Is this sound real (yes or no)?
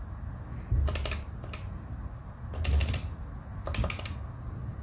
yes